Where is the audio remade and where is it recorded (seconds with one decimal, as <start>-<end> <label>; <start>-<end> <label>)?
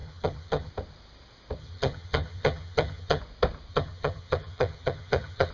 0.0-0.7 remade; 0.7-1.6 recorded; 1.6-3.2 remade; 3.2-3.7 recorded; 3.7-5.5 remade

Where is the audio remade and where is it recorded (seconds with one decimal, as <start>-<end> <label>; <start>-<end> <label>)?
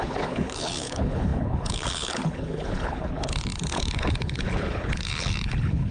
0.0-5.9 remade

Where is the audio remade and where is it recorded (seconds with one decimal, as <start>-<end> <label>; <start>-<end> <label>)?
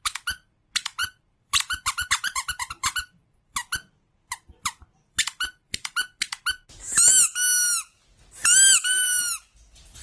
0.0-1.0 recorded; 1.0-6.2 remade; 6.2-8.4 recorded; 8.4-9.2 remade; 9.2-10.0 recorded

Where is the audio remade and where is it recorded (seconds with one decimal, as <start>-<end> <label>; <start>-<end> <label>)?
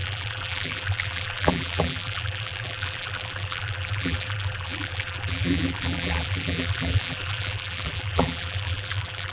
0.0-9.3 remade